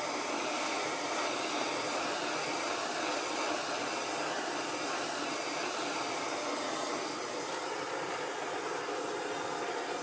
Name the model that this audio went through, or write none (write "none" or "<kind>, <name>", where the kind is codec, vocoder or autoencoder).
none